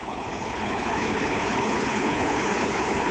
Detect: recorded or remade remade